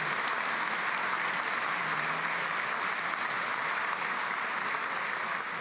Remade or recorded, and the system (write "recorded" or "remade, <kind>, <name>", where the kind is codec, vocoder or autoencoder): recorded